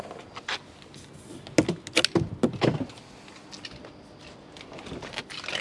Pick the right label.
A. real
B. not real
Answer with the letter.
A